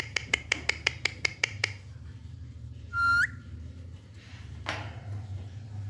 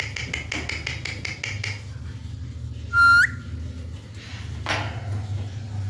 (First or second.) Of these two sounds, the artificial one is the first